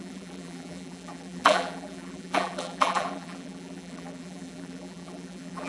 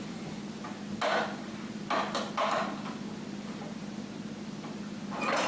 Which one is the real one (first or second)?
second